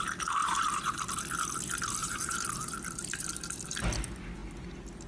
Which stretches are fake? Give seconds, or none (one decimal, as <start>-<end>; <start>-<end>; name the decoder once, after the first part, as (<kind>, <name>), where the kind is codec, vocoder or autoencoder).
0.4-1.1 (vocoder, BigVGAN v2); 2.0-2.7